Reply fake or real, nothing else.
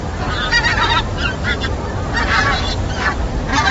real